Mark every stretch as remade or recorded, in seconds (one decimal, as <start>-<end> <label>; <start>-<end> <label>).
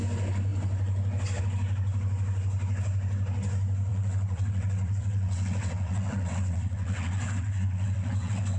0.0-3.9 recorded; 3.9-8.6 remade